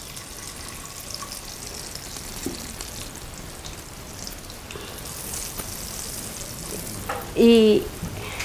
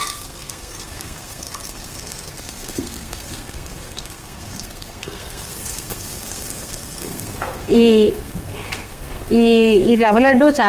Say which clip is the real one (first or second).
first